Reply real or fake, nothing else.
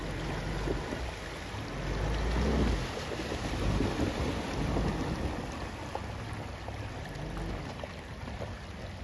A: real